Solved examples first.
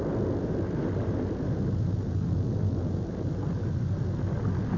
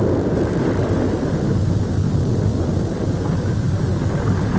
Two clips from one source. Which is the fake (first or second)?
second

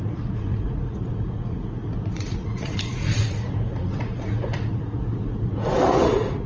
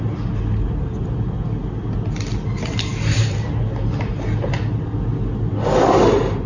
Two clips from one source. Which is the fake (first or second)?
first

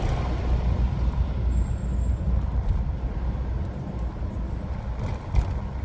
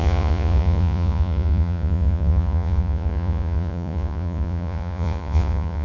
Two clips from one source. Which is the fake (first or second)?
second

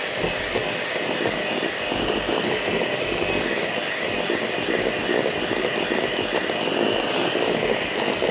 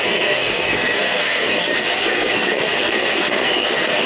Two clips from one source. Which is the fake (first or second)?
second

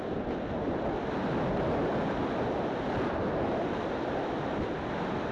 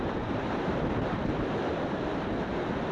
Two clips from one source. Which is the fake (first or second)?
second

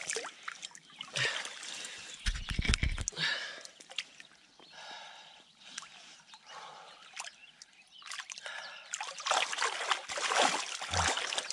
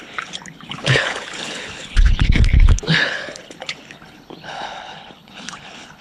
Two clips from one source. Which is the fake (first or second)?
second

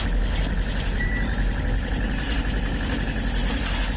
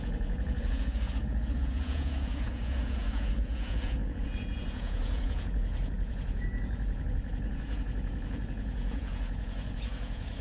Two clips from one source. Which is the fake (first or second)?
second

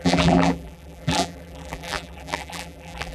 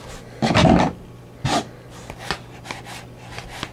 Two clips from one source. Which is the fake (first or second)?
first